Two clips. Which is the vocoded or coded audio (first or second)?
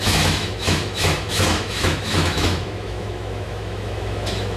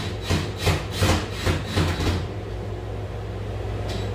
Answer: first